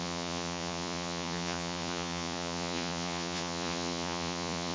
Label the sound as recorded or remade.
remade